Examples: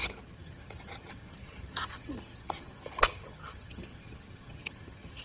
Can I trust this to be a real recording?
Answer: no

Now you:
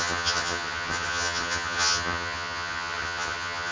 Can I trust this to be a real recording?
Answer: no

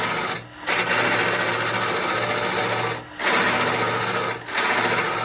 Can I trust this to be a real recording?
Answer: yes